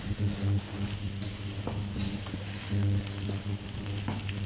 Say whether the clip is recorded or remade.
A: recorded